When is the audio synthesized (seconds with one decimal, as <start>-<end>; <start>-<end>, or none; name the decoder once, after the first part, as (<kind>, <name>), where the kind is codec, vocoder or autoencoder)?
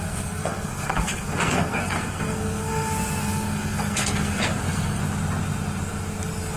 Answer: 0.0-5.0 (codec, SNAC)